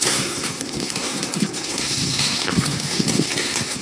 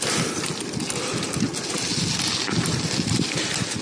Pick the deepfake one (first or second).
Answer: first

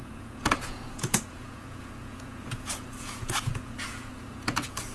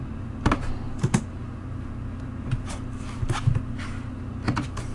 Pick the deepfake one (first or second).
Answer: first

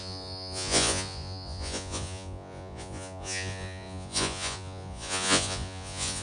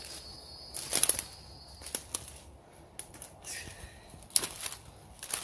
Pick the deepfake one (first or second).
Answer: first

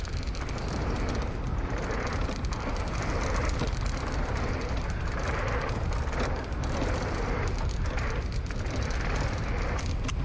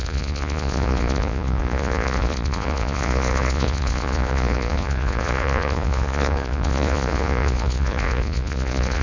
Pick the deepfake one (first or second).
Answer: second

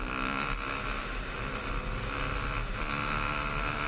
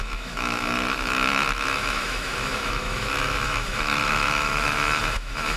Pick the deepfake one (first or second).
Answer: second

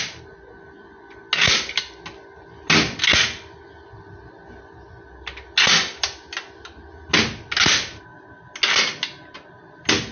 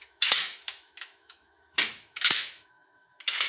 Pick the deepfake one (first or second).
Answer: second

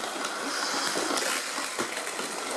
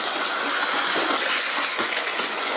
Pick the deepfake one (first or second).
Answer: second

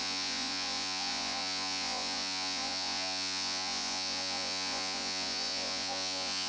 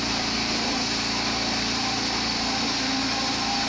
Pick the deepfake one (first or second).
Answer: first